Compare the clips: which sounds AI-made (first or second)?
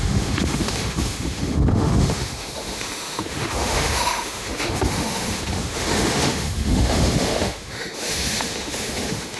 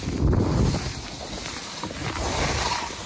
first